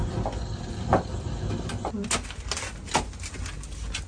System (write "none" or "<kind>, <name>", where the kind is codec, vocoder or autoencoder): none